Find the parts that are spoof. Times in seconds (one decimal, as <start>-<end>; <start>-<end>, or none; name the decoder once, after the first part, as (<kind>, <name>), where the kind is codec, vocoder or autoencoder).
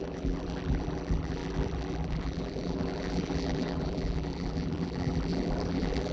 0.0-6.1 (vocoder, BigVGAN v2)